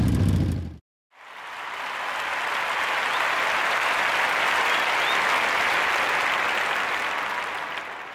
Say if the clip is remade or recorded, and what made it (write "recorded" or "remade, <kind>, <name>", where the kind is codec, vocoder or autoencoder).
recorded